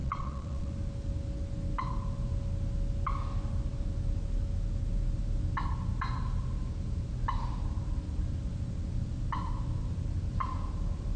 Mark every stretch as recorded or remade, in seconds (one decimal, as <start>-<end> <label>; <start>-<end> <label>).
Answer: 0.0-0.7 remade; 0.7-11.2 recorded